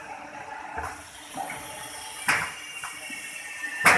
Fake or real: fake